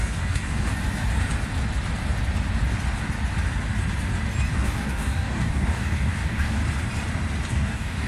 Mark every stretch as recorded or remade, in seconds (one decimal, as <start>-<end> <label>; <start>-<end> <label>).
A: 0.0-0.7 remade; 0.7-4.5 recorded; 4.5-6.6 remade; 6.6-7.5 recorded; 7.5-8.1 remade